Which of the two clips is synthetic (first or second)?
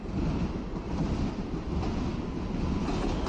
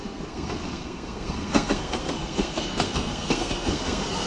second